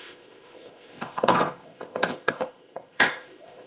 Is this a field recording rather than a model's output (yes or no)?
no